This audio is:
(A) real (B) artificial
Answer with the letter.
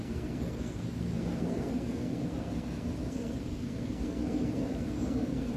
B